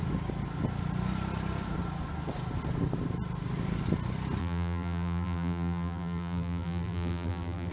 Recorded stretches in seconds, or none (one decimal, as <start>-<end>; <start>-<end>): 0.0-4.4